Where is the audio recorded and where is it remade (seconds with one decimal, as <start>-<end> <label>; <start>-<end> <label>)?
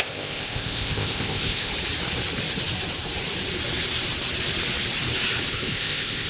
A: 0.0-1.7 remade; 1.7-5.5 recorded; 5.5-6.3 remade